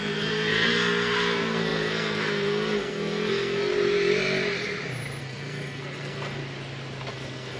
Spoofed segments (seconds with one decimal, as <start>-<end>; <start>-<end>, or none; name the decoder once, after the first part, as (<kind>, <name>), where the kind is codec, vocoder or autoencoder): 0.0-3.7 (codec, SNAC); 5.2-6.4; 7.1-7.6